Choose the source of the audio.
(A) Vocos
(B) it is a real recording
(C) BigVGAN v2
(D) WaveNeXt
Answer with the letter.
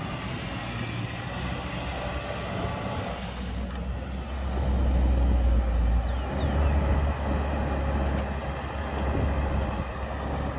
B